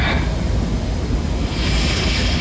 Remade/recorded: recorded